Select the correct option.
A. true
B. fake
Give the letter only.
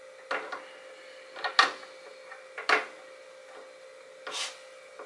A